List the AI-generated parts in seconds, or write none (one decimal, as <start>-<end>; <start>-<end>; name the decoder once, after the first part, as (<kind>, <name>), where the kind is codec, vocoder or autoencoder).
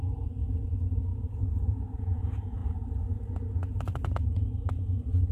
0.0-2.6 (vocoder, Vocos)